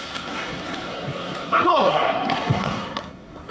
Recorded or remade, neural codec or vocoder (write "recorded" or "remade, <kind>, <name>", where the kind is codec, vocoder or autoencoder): remade, codec, SNAC